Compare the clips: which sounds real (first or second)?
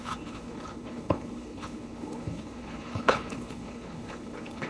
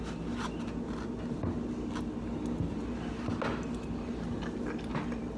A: second